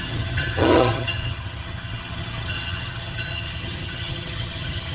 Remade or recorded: remade